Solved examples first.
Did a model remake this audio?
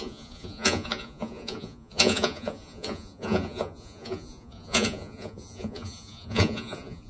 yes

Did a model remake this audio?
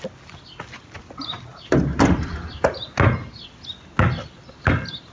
no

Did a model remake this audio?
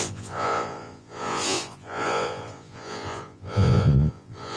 yes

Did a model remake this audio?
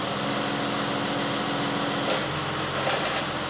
no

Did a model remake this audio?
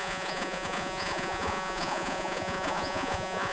yes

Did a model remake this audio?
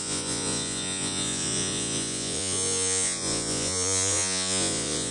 yes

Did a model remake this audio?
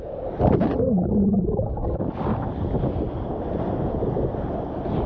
no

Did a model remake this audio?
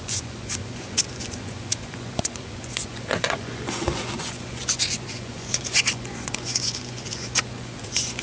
yes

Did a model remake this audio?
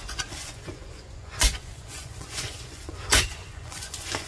yes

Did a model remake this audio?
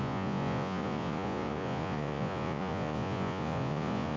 yes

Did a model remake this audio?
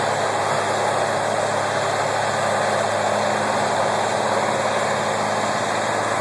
no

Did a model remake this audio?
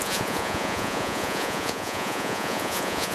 yes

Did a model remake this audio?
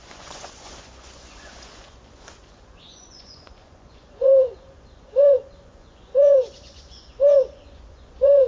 yes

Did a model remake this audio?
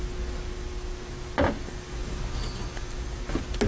no